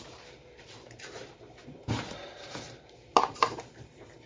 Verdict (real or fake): fake